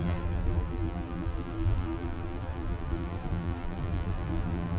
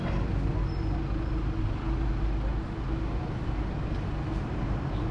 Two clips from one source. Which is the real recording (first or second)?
second